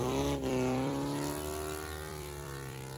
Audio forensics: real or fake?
fake